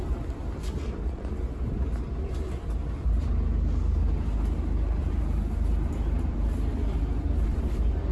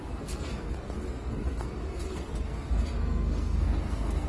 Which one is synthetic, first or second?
second